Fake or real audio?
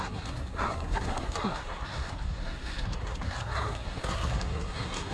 fake